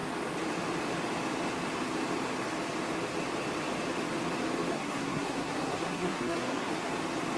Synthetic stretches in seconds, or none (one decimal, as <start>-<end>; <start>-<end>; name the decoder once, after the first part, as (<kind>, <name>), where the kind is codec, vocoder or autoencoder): 4.7-6.7 (codec, SNAC)